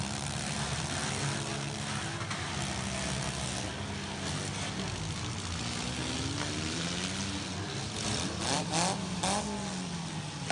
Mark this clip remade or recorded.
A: recorded